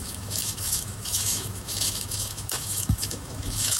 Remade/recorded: remade